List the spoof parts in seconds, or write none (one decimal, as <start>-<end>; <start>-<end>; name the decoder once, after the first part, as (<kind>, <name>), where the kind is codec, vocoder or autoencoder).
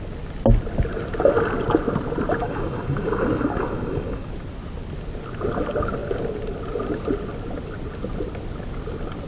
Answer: 2.4-4.3 (codec, DAC)